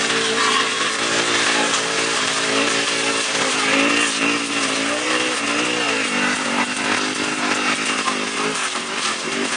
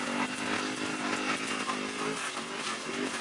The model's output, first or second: first